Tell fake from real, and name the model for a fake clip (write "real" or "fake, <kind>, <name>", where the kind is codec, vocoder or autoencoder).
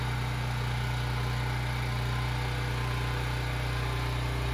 real